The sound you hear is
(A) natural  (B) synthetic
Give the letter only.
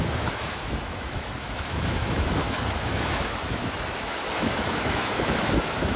B